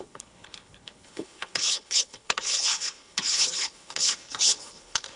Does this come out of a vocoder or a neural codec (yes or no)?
yes